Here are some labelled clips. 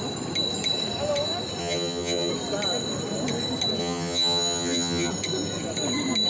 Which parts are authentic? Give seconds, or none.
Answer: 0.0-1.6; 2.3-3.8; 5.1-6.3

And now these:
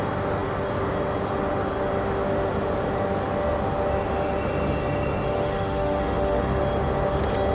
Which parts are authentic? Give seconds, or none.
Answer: 0.0-5.3; 6.6-7.5